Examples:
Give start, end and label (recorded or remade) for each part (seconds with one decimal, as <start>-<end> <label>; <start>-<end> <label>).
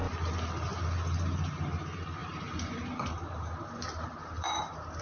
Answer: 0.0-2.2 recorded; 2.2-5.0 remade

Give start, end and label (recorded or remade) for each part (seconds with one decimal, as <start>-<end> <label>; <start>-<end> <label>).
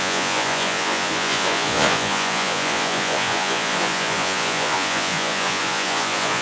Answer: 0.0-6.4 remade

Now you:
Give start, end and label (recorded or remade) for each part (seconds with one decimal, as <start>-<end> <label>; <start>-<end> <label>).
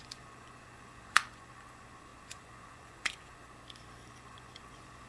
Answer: 0.0-3.4 remade; 3.4-4.1 recorded; 4.1-5.1 remade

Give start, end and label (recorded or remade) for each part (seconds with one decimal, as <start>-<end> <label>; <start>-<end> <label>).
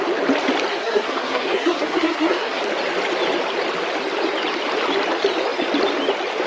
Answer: 0.0-0.7 recorded; 0.7-2.6 remade; 2.6-6.5 recorded